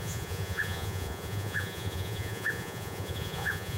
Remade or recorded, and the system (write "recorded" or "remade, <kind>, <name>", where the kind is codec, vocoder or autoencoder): remade, vocoder, Vocos